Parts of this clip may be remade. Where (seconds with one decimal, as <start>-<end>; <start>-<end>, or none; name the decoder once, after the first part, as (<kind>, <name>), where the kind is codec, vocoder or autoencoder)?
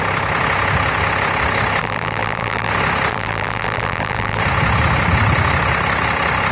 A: 1.8-2.7 (vocoder, BigVGAN v2); 3.1-4.4